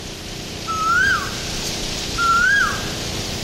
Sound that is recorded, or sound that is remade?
remade